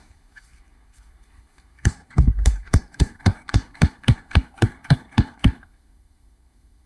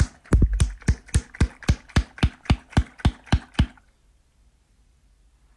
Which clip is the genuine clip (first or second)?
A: second